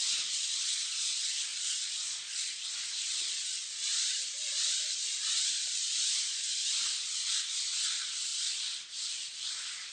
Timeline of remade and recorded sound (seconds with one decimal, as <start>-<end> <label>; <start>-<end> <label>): 0.0-9.9 recorded